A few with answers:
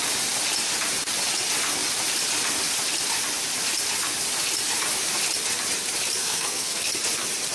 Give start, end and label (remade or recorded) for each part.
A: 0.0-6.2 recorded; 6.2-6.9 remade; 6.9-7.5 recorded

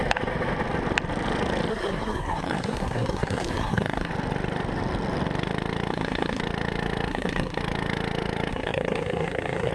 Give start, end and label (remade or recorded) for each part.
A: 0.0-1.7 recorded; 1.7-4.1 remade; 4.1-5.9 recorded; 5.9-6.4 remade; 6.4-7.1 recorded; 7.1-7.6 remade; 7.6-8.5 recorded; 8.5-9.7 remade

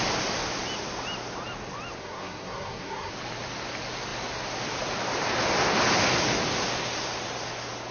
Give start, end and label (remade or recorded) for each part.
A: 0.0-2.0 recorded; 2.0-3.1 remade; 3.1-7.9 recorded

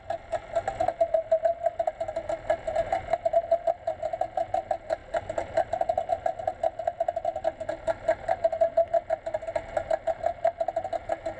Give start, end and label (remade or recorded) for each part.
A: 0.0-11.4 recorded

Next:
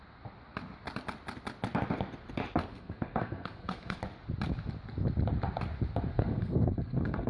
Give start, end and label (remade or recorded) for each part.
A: 0.0-2.7 recorded; 2.7-4.0 remade; 4.0-6.1 recorded; 6.1-7.3 remade

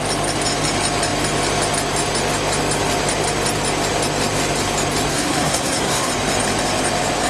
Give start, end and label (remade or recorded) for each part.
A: 0.0-5.1 recorded; 5.1-6.1 remade; 6.1-7.3 recorded

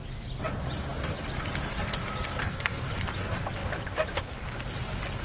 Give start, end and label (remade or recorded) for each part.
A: 0.0-2.4 recorded; 2.4-2.9 remade; 2.9-5.2 recorded

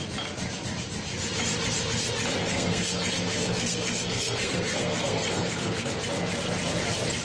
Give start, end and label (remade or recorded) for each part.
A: 0.0-2.4 recorded; 2.4-6.0 remade; 6.0-7.2 recorded